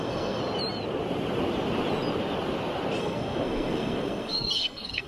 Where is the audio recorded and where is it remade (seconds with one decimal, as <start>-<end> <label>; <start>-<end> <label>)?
0.0-0.4 remade; 0.4-3.0 recorded; 3.0-5.1 remade